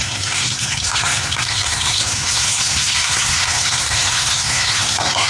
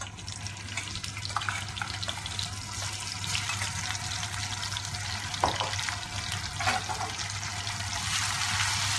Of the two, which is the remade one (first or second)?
first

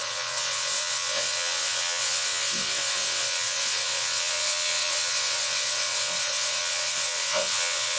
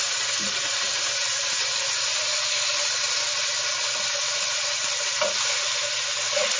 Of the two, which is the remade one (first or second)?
first